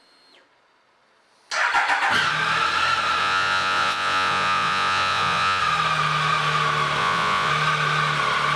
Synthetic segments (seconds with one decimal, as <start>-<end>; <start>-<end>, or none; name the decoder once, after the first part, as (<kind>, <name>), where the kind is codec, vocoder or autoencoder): 3.2-5.6 (vocoder, Vocos); 7.0-7.5